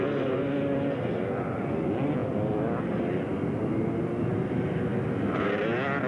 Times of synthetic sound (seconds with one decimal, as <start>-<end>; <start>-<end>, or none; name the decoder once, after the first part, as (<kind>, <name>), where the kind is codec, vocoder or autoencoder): none